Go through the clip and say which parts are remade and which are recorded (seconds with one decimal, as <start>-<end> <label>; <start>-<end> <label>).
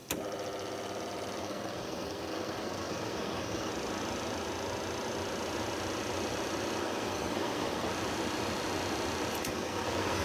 0.0-1.4 recorded; 1.4-3.7 remade; 3.7-6.8 recorded; 6.8-7.9 remade; 7.9-9.4 recorded; 9.4-10.2 remade